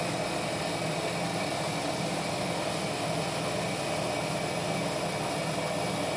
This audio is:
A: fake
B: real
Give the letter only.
B